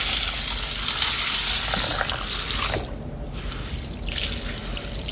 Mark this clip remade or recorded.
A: recorded